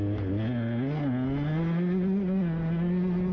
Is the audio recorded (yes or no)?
yes